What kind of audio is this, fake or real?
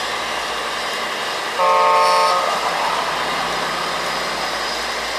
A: real